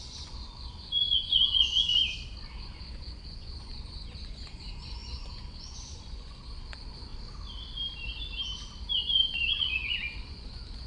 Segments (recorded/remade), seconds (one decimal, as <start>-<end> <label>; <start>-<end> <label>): 0.0-2.0 remade; 2.0-2.6 recorded; 2.6-7.1 remade; 7.1-9.0 recorded; 9.0-10.9 remade